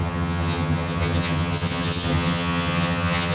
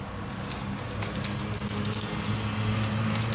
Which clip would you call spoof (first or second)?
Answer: first